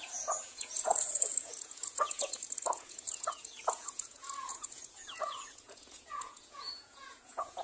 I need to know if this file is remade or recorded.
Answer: remade